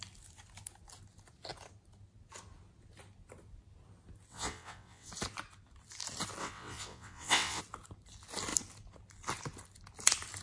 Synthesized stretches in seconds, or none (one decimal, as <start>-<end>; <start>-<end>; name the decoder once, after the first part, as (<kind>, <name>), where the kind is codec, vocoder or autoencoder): 4.3-5.1 (vocoder, WaveNeXt); 6.4-7.6

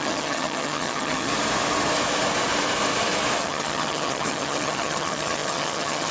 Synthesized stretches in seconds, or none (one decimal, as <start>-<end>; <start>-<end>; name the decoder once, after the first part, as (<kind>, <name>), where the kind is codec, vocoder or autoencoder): 0.0-1.3 (vocoder, HiFi-GAN); 3.4-6.1

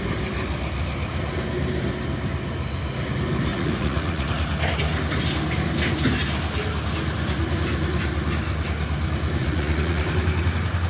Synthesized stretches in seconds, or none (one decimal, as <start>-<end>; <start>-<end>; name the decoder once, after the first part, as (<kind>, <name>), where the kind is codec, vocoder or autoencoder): 3.5-4.3 (vocoder, Vocos); 9.4-10.1